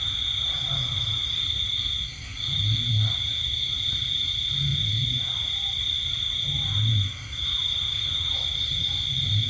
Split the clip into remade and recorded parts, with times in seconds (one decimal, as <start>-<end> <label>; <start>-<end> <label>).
0.0-2.3 remade; 2.3-2.9 recorded; 2.9-9.5 remade